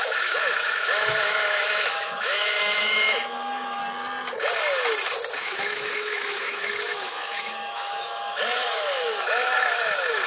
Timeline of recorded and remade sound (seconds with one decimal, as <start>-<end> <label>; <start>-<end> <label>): 0.0-3.8 remade; 3.8-5.4 recorded; 5.4-10.3 remade